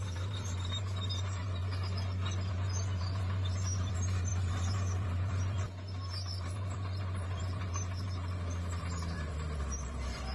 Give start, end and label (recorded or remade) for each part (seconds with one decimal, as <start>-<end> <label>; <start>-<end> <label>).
0.0-1.6 remade; 1.6-2.5 recorded; 2.5-10.3 remade